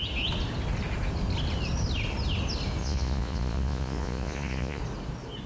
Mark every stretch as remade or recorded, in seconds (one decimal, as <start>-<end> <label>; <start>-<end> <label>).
0.0-2.8 recorded; 2.8-4.8 remade; 4.8-5.5 recorded